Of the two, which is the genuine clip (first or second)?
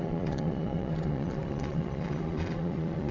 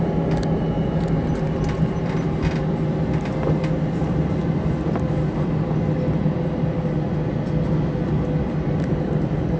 second